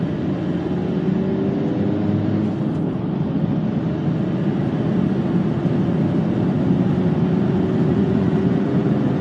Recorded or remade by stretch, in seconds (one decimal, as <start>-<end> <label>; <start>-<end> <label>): 0.0-7.9 recorded; 7.9-9.2 remade